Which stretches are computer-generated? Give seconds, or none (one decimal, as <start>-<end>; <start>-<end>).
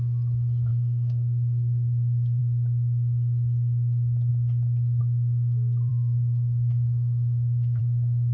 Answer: 0.7-2.4; 5.9-7.8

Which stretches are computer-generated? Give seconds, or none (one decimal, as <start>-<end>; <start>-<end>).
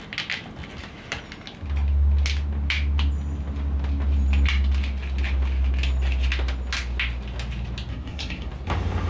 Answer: 7.9-8.5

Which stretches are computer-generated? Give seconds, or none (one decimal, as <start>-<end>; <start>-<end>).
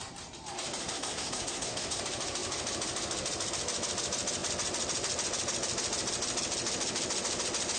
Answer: 0.8-2.0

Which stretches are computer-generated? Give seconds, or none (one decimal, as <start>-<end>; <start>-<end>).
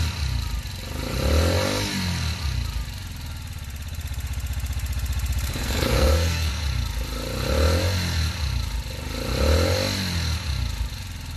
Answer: 5.5-6.5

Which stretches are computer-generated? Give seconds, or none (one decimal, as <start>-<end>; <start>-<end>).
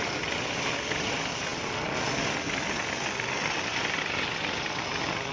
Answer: none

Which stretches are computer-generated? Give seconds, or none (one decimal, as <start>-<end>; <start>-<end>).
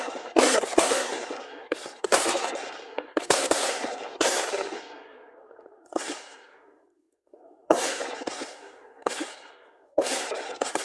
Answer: 0.0-10.8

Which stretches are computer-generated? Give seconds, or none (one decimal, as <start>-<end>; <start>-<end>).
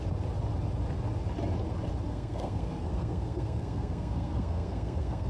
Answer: 2.1-5.3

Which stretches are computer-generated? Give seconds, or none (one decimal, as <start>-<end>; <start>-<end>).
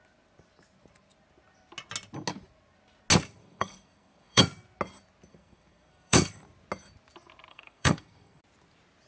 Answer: 3.4-4.4; 5.3-6.3; 7.5-8.4